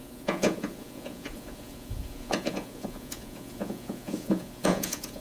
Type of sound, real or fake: fake